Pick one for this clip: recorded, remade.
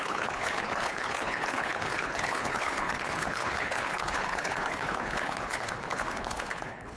remade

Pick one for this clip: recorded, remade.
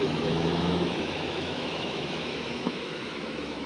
remade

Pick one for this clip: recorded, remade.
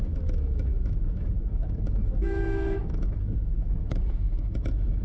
remade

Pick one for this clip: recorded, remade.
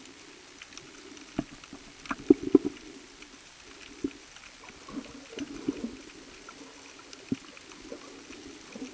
recorded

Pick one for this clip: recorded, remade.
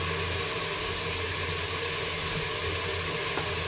recorded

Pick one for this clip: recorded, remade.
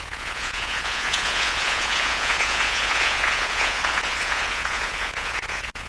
remade